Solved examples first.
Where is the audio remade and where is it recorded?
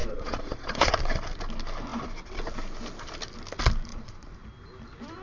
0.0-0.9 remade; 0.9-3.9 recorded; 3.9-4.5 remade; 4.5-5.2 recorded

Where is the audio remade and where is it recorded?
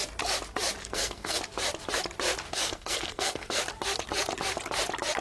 0.0-0.8 recorded; 0.8-1.4 remade; 1.4-2.5 recorded; 2.5-3.6 remade; 3.6-5.2 recorded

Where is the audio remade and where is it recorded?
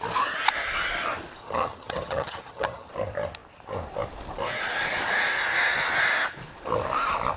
0.0-1.4 recorded; 1.4-2.9 remade; 2.9-7.4 recorded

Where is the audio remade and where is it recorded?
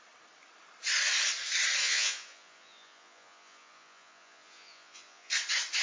0.0-1.8 recorded; 1.8-5.3 remade; 5.3-5.8 recorded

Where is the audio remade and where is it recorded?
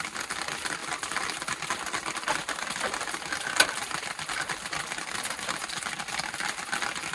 0.0-7.1 recorded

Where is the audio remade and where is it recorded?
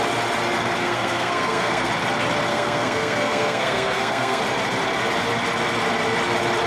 0.0-0.8 recorded; 0.8-1.9 remade; 1.9-2.5 recorded; 2.5-4.4 remade; 4.4-6.7 recorded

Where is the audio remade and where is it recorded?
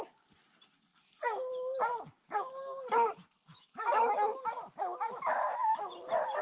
0.0-3.4 recorded; 3.4-5.8 remade; 5.8-6.4 recorded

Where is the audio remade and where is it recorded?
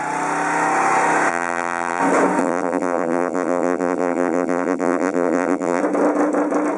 0.0-1.3 recorded; 1.3-2.0 remade; 2.0-2.4 recorded; 2.4-5.8 remade; 5.8-6.8 recorded